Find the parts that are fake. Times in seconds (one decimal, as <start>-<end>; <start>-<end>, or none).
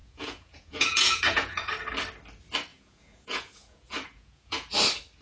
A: 0.0-1.7; 2.7-4.7